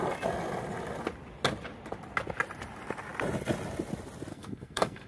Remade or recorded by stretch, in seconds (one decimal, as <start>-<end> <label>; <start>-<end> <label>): 0.0-4.3 recorded; 4.3-5.1 remade